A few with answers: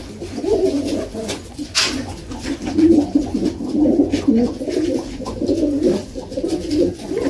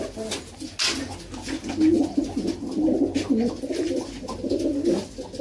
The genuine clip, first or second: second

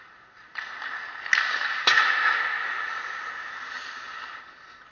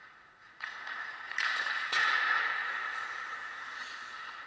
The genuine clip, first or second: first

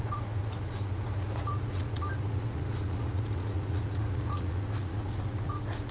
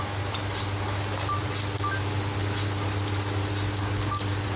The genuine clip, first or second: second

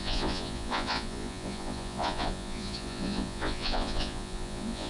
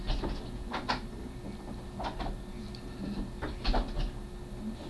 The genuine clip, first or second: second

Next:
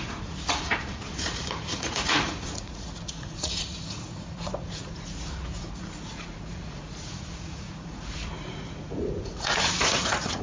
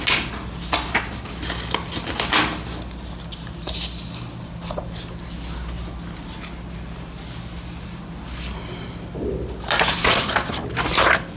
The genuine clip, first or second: second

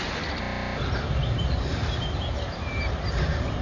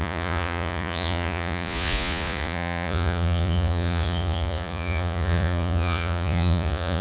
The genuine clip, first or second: first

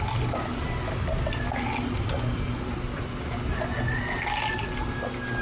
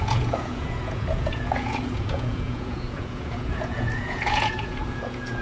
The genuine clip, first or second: first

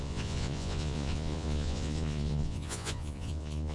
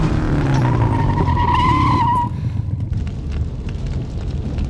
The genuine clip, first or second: second